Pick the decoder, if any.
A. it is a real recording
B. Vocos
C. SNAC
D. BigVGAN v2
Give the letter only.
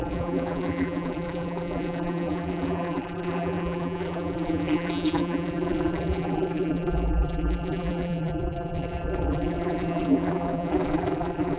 D